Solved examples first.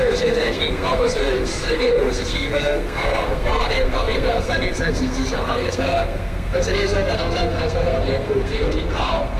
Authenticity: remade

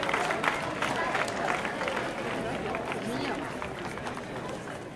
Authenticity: recorded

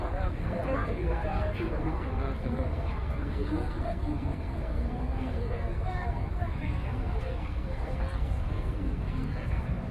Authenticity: remade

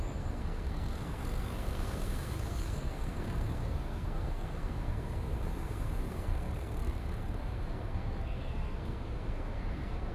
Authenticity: remade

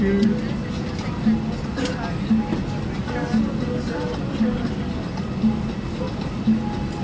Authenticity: recorded